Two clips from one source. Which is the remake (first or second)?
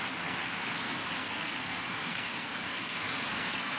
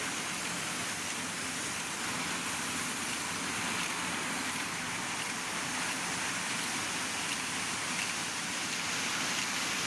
first